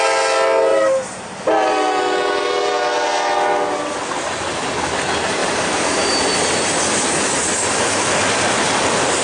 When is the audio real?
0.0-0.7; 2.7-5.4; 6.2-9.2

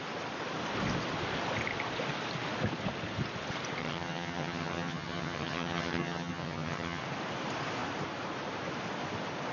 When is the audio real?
0.0-3.8; 7.0-9.5

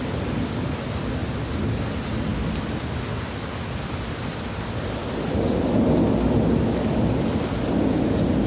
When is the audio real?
0.0-1.2; 1.8-8.5

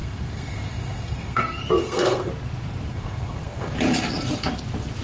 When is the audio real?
1.4-1.8; 2.3-2.9; 3.7-5.0